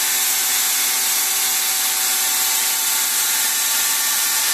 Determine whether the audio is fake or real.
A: real